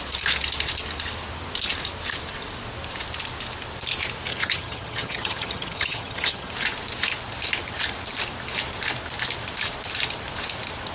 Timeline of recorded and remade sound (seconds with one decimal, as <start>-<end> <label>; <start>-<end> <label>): 0.0-4.3 recorded; 4.3-6.5 remade; 6.5-10.9 recorded